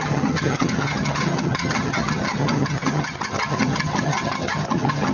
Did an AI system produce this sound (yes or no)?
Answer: yes